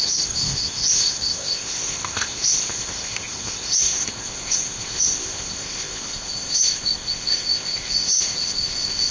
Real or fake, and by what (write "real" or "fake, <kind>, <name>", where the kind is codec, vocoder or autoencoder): fake, codec, ZipCodec